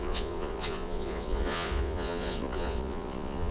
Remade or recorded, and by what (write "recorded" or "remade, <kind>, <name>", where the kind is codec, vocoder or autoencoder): remade, vocoder, Vocos